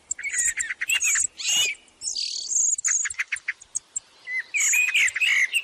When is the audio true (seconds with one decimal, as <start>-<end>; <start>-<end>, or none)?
0.0-5.6